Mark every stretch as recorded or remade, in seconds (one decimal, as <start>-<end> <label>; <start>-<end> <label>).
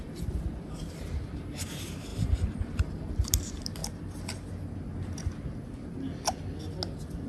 0.0-3.8 remade; 3.8-7.3 recorded